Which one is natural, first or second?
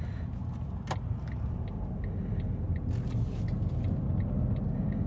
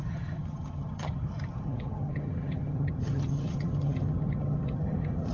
first